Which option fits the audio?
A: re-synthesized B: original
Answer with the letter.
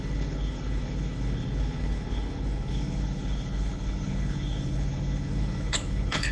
A